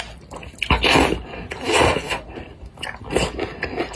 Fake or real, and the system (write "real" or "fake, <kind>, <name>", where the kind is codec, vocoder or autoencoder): real